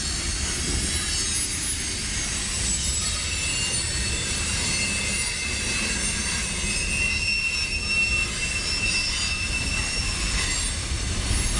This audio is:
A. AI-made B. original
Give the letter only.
B